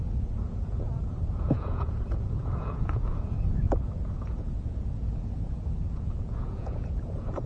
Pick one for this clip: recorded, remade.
remade